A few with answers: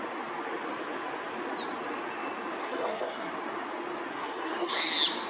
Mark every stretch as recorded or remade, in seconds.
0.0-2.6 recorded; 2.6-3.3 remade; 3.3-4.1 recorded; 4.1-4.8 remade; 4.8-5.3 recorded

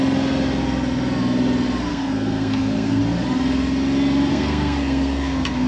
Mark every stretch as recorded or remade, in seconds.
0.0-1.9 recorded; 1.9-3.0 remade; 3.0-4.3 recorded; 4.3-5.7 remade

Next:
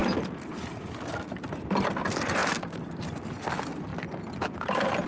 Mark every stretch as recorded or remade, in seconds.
0.0-5.1 recorded

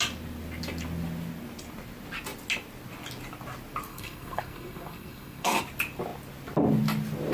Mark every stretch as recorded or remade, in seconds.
0.0-3.9 recorded; 3.9-5.6 remade; 5.6-7.3 recorded